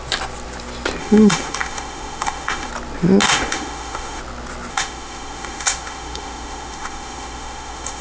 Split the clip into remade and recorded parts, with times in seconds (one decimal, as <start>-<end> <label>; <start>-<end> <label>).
0.0-1.0 recorded; 1.0-2.7 remade; 2.7-3.2 recorded; 3.2-4.2 remade; 4.2-4.7 recorded; 4.7-8.0 remade